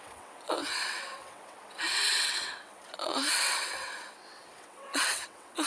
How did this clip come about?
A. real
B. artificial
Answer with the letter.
B